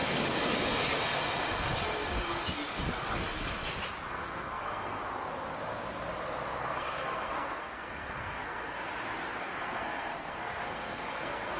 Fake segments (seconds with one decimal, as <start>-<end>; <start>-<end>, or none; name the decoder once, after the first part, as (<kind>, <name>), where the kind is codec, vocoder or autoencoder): 4.1-5.0 (codec, SNAC); 6.6-8.9; 9.4-11.6